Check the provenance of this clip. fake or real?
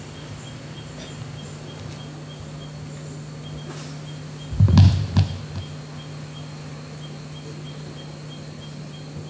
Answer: real